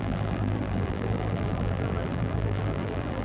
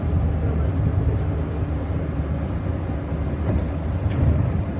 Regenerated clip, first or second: first